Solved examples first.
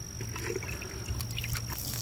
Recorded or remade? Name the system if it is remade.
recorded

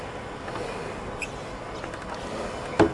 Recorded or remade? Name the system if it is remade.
recorded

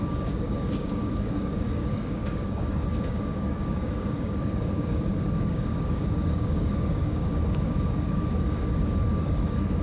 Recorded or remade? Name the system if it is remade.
remade, codec, DAC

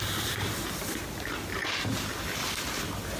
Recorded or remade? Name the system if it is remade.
recorded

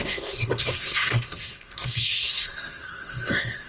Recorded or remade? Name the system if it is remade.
remade, codec, SNAC